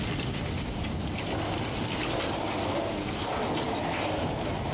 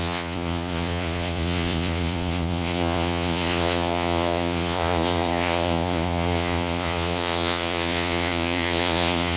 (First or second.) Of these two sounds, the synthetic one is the second